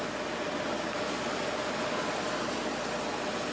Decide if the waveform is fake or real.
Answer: real